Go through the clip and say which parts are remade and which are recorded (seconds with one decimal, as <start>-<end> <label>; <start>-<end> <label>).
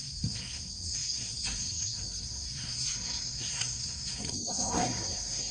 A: 0.0-5.5 remade